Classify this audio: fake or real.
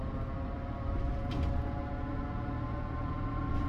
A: real